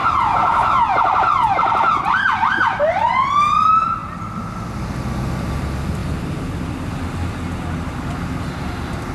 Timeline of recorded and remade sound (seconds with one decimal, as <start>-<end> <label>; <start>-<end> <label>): 0.0-6.0 recorded; 6.0-6.9 remade; 6.9-9.1 recorded